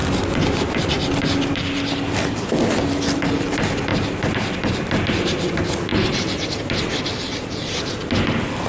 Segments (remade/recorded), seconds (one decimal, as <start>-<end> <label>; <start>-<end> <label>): 0.0-2.5 remade; 2.5-3.9 recorded; 3.9-4.7 remade; 4.7-5.9 recorded; 5.9-7.9 remade; 7.9-8.7 recorded